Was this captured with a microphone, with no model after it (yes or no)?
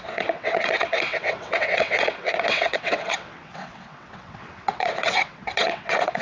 no